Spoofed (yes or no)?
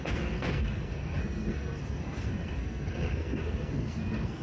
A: yes